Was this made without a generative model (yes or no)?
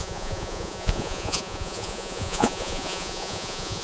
no